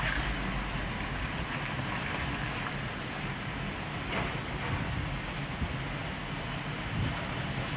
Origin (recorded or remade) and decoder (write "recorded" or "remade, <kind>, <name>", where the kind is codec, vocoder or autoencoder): recorded